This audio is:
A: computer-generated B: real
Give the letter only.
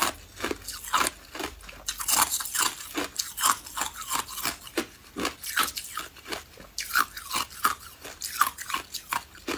B